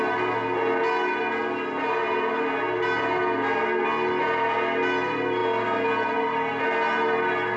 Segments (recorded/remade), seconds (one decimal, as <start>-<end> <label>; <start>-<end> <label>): 0.0-7.6 recorded